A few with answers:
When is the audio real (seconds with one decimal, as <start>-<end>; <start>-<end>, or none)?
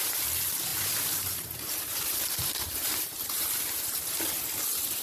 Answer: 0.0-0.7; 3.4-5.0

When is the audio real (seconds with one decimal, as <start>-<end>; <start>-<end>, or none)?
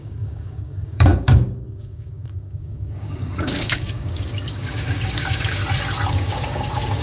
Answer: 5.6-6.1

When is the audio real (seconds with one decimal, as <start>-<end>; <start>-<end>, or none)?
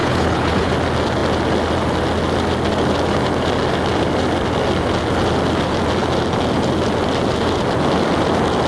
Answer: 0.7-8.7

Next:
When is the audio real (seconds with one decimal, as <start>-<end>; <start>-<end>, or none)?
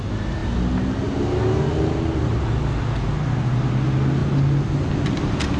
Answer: 0.0-5.6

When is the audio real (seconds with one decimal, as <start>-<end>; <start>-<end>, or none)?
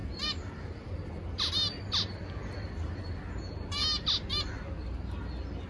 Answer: 0.9-2.1; 2.7-5.7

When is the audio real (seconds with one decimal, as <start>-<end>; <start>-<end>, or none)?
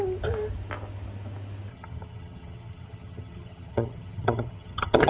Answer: 0.0-1.7